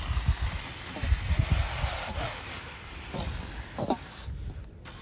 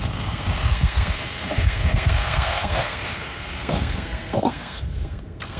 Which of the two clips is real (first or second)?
first